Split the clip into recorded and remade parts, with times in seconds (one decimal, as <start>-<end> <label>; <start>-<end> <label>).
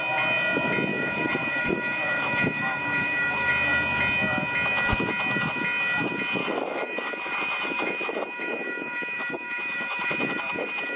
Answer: 0.0-0.9 recorded; 0.9-3.5 remade; 3.5-6.4 recorded; 6.4-11.0 remade